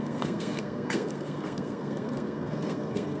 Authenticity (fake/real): fake